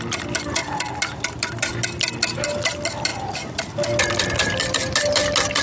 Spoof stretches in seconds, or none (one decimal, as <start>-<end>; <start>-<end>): none